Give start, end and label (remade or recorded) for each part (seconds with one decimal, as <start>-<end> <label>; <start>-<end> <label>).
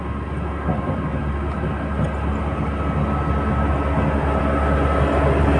0.0-5.6 recorded